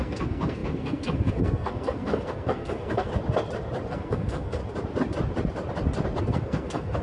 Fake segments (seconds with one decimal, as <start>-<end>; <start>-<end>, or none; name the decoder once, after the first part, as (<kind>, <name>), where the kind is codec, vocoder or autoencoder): 0.0-3.1 (codec, SNAC); 3.9-4.6; 6.2-7.0